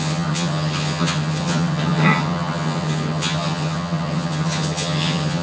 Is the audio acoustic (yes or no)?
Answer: no